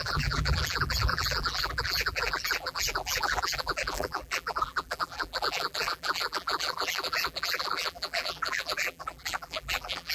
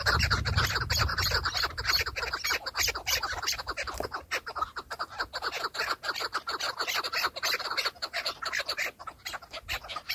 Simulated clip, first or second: first